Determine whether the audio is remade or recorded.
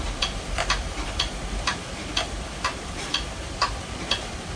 remade